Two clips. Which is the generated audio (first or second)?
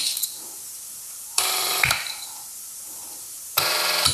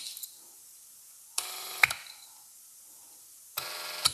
first